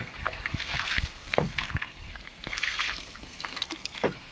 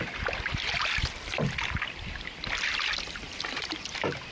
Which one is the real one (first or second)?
second